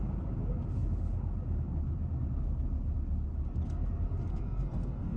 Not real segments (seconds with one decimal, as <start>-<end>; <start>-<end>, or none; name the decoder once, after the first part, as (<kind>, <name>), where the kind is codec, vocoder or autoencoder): 4.3-5.2 (codec, SNAC)